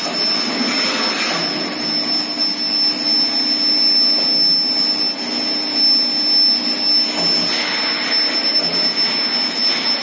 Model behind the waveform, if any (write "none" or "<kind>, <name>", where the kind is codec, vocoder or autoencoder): none